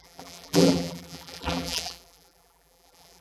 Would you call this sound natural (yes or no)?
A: no